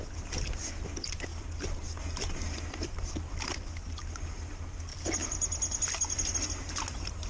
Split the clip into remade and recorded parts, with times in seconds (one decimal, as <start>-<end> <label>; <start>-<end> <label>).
0.0-7.3 recorded